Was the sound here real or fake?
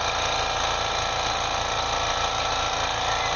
real